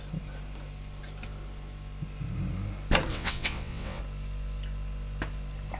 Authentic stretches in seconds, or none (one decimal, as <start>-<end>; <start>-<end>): 0.0-3.1; 4.0-5.8